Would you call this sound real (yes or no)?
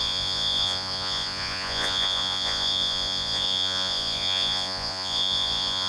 no